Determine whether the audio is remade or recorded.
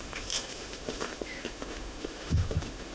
remade